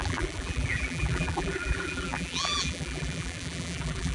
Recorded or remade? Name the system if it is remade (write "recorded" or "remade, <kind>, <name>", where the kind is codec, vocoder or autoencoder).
remade, vocoder, BigVGAN v2